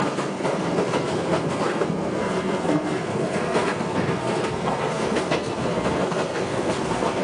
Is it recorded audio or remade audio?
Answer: remade